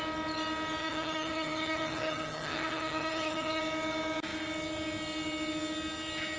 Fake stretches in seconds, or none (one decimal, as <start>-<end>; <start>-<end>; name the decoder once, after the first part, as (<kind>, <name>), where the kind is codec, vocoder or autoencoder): 0.8-3.6 (vocoder, HiFi-GAN)